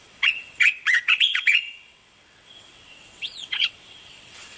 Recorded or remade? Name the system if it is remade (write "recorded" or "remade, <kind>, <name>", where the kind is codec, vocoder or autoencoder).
remade, vocoder, WaveNeXt